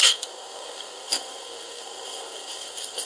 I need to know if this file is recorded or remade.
remade